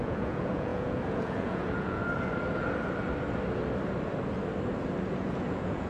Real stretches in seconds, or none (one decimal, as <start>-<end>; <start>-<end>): 2.0-5.5